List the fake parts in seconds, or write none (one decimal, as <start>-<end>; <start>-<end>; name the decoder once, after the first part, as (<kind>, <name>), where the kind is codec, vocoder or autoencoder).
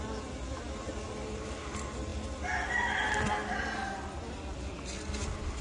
none